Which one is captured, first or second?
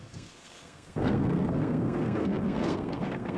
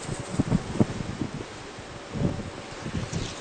second